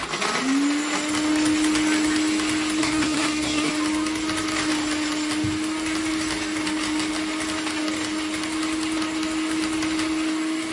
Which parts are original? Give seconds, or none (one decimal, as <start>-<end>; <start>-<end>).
0.0-2.8; 3.7-10.7